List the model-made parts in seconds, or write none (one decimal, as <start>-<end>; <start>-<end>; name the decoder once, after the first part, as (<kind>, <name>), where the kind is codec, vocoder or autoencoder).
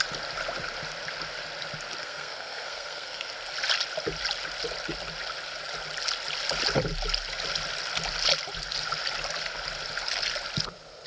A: 2.0-3.3 (codec, SNAC)